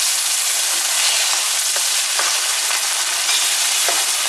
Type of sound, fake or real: real